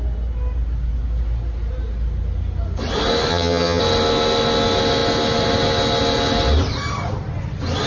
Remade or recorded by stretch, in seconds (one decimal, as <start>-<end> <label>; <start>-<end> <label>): 0.0-3.3 recorded; 3.3-3.8 remade; 3.8-7.9 recorded